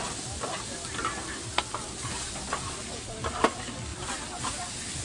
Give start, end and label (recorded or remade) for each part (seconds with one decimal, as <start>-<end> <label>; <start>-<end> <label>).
0.0-5.0 recorded